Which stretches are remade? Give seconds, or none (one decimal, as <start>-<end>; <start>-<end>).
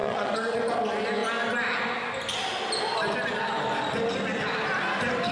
0.0-0.6